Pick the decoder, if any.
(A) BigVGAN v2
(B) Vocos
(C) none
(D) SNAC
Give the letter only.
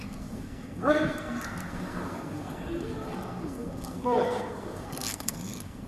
D